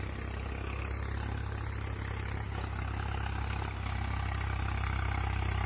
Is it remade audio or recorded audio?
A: recorded